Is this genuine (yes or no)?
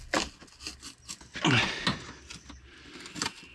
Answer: yes